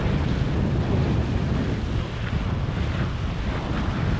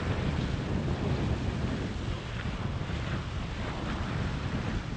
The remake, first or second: second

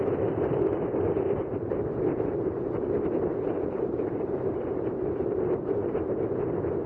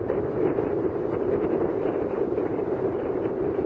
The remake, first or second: second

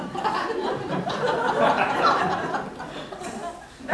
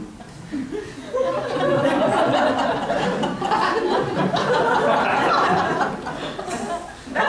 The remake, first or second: first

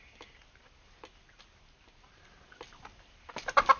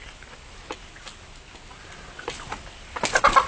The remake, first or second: first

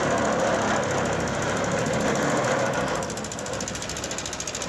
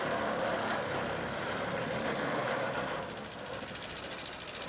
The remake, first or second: second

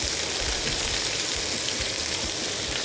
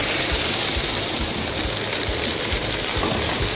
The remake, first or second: second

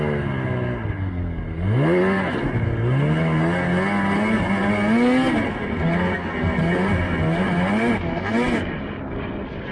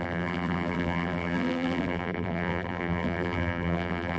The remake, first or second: second